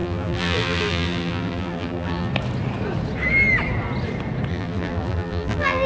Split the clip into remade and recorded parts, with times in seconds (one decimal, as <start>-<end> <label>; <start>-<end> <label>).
0.0-2.3 remade; 2.3-4.5 recorded; 4.5-5.9 remade